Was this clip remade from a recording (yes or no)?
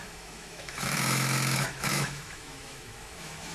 yes